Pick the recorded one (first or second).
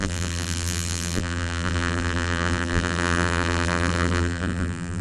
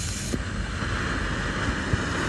second